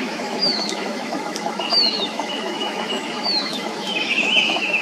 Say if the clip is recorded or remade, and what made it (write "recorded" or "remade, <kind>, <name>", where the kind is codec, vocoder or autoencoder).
remade, autoencoder, DAC-VAE